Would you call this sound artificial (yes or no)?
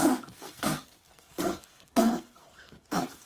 yes